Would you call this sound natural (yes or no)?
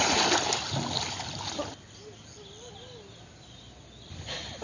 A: yes